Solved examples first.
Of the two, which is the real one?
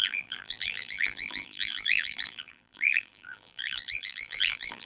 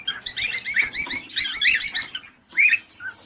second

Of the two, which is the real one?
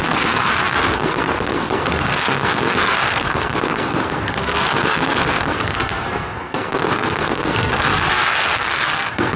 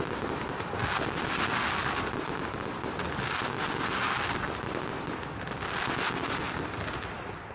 second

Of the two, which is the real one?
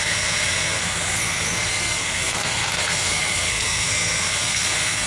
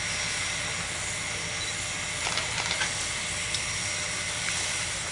second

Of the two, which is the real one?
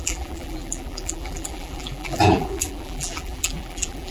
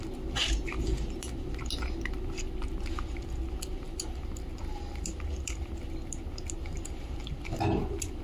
second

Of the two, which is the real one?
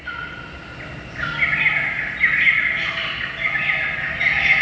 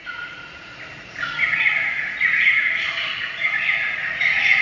first